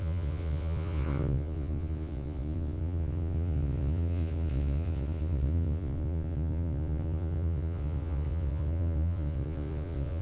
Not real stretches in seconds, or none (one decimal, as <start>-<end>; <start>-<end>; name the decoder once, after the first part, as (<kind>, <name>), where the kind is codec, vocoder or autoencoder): 0.0-10.2 (vocoder, Vocos)